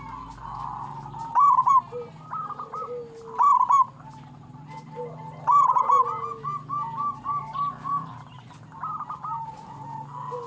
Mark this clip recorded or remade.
recorded